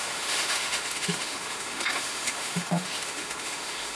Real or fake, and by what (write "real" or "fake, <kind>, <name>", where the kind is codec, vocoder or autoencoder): fake, autoencoder, DAC-VAE